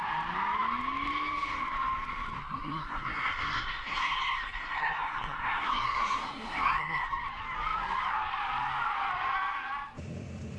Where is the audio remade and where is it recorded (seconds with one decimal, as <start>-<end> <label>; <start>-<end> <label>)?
0.0-2.4 recorded; 2.4-7.1 remade; 7.1-10.6 recorded